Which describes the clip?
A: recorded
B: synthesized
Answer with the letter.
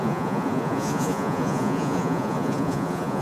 B